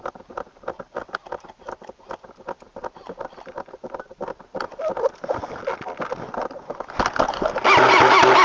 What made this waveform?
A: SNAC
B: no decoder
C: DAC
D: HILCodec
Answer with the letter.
B